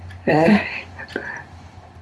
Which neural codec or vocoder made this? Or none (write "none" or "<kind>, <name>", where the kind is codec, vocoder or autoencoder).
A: none